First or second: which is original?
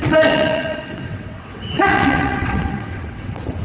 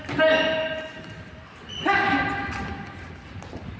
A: second